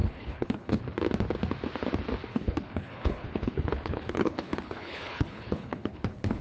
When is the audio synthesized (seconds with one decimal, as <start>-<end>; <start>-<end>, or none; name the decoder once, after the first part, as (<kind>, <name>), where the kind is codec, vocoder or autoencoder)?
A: 0.0-0.8 (codec, HILCodec); 2.3-6.4